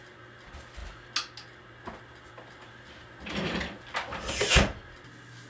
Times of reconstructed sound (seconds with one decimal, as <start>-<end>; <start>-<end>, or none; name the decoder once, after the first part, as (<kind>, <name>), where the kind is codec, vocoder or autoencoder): none